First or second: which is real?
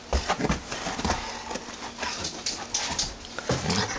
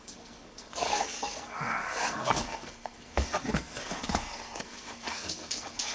first